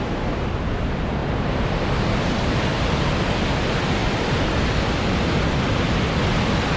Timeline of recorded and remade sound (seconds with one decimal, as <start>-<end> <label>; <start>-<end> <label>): 0.0-6.8 recorded